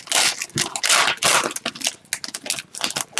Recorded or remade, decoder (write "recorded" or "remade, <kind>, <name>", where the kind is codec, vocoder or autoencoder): recorded